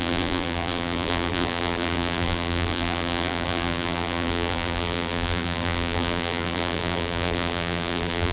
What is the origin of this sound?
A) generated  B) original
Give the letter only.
A